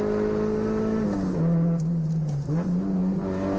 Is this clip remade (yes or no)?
no